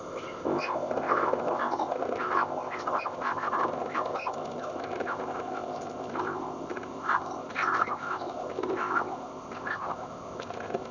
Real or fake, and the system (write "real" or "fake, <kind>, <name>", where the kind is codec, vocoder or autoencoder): fake, codec, ZipCodec